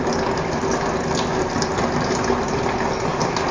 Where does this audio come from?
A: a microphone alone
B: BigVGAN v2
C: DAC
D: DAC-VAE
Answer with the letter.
A